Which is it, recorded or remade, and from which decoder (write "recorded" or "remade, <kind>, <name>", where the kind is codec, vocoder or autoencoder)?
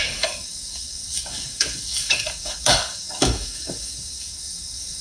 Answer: remade, codec, DAC